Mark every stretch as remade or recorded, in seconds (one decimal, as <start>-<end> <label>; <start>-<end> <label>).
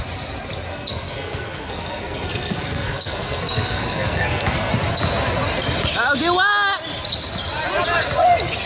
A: 0.0-0.7 recorded; 0.7-4.7 remade; 4.7-8.7 recorded